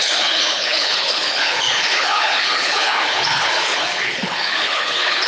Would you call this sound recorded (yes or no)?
no